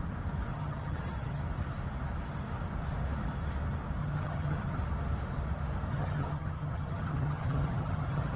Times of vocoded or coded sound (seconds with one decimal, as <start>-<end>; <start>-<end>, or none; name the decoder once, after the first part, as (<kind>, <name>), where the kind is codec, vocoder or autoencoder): 0.5-1.4 (vocoder, HiFi-GAN); 4.0-4.8; 5.9-8.4